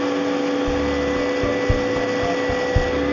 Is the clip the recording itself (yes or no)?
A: yes